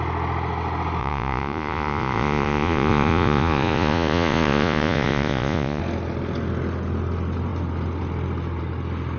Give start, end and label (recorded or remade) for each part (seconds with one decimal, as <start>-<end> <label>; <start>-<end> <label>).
0.0-1.0 recorded; 1.0-5.8 remade; 5.8-9.2 recorded